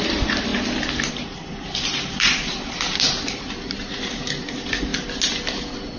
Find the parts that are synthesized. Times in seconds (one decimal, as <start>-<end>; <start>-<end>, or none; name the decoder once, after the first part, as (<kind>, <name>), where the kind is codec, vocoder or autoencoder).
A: 0.0-0.5 (vocoder, BigVGAN v2); 1.1-4.9